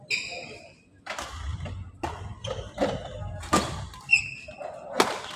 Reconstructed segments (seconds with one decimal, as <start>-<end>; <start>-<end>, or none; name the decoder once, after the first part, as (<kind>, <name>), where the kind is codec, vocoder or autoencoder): none